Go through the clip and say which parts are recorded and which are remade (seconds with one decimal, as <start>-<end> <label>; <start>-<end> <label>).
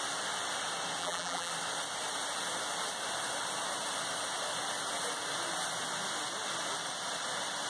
0.0-1.0 recorded; 1.0-1.5 remade; 1.5-7.7 recorded